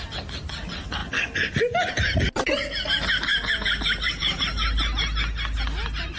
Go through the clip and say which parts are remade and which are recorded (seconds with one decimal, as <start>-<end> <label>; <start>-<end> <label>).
0.0-3.3 recorded; 3.3-4.4 remade; 4.4-6.2 recorded